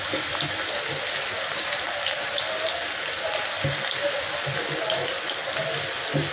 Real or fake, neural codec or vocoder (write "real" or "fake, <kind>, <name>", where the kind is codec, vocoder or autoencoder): real